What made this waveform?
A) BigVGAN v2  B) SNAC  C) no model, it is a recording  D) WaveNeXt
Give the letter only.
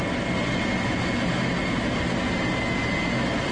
C